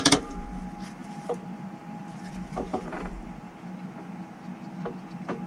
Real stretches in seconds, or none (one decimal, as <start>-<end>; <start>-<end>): 0.0-1.0; 2.0-2.7; 3.7-5.5